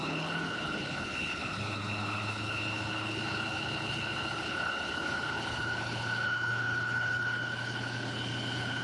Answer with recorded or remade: remade